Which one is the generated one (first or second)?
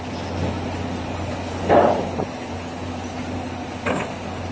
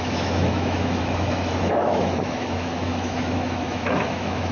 second